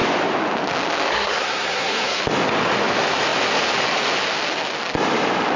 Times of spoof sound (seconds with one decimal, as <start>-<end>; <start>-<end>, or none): 1.1-2.2